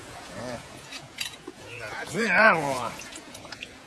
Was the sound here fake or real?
fake